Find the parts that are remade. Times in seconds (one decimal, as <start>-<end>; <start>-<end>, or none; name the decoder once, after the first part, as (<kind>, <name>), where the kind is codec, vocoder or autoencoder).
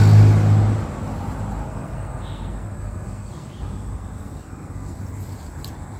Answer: 1.6-5.0 (codec, SNAC)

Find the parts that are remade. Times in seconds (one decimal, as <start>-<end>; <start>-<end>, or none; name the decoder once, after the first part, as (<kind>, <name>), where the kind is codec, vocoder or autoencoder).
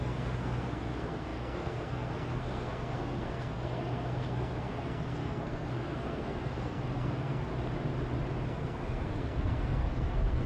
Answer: 0.0-7.5 (codec, SNAC); 8.5-10.5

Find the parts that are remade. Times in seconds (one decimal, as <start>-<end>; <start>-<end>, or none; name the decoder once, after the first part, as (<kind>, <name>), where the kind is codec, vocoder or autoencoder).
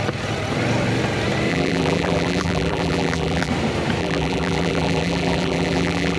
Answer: 1.5-3.5 (vocoder, BigVGAN v2); 4.0-6.2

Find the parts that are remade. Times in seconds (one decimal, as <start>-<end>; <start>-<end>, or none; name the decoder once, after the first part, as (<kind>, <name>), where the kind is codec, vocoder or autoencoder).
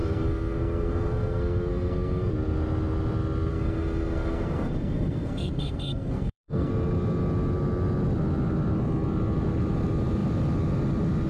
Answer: 0.0-2.3 (codec, SNAC); 3.5-6.7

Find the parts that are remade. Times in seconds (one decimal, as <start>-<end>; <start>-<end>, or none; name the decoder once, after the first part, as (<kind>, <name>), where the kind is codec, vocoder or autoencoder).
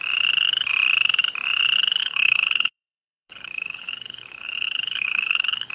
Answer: 2.0-5.7 (codec, HILCodec)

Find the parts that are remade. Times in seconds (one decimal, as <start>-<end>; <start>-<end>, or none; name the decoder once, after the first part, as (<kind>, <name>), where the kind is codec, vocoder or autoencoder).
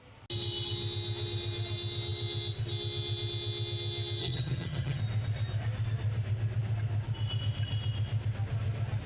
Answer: 4.2-5.0 (vocoder, HiFi-GAN)